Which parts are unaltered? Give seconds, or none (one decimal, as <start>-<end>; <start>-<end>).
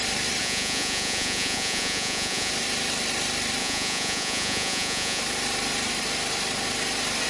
0.0-0.4; 2.5-3.6; 5.2-7.3